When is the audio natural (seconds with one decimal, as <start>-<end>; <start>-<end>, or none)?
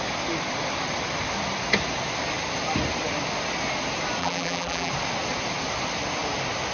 0.0-4.2; 4.9-6.7